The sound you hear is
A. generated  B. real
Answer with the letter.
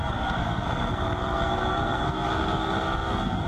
A